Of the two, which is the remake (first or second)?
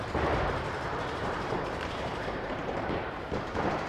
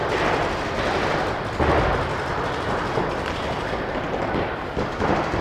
first